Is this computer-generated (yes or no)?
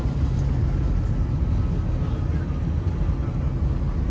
no